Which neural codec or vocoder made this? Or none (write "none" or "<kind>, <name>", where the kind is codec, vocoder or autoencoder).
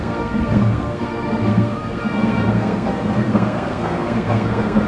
codec, SNAC